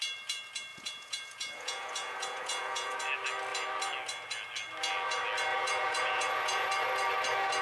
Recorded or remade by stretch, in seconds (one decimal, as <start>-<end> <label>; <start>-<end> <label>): 0.0-0.7 recorded; 0.7-3.0 remade; 3.0-5.5 recorded; 5.5-6.7 remade; 6.7-7.6 recorded